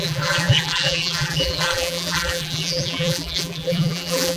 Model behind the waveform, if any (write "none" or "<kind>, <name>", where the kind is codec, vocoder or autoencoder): vocoder, BigVGAN v2